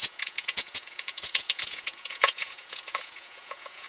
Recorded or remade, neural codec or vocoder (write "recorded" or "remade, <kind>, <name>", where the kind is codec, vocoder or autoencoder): remade, vocoder, Vocos